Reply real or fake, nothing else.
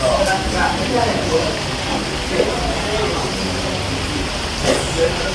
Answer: real